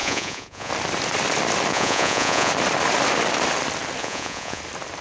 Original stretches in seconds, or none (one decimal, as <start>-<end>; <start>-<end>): 0.7-1.7; 2.5-4.0; 4.6-5.0